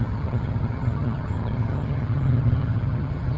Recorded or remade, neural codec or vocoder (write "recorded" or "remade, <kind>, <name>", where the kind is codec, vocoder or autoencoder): remade, vocoder, HiFi-GAN